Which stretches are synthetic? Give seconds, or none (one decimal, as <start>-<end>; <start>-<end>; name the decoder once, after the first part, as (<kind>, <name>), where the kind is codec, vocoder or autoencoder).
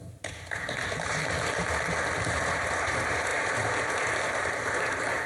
0.0-1.2 (vocoder, BigVGAN v2); 2.4-5.3